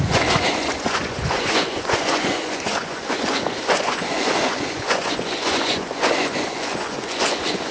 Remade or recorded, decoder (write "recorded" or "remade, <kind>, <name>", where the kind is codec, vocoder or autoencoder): remade, vocoder, Vocos